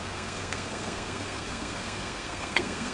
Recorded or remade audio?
remade